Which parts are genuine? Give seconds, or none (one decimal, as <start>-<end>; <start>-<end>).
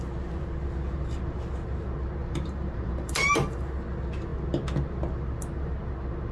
0.0-2.2; 3.7-6.3